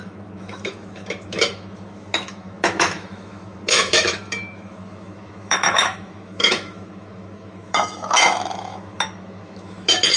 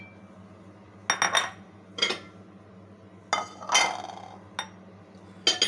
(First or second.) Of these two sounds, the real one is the second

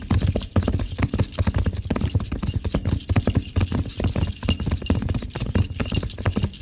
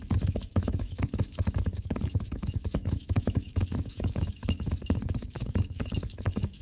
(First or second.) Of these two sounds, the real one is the first